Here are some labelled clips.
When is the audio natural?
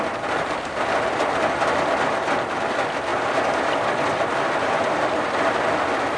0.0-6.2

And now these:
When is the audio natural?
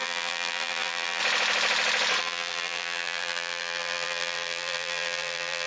1.2-2.2